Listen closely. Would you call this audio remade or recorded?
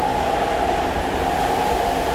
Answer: recorded